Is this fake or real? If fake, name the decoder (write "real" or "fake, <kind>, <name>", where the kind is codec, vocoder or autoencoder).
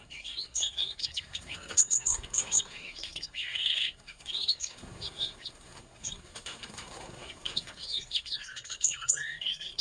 fake, codec, SNAC